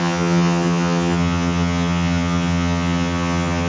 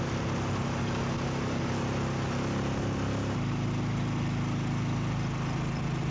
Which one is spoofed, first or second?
first